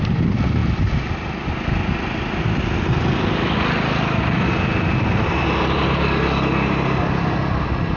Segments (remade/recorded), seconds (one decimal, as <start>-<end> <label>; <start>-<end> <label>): 0.0-8.0 recorded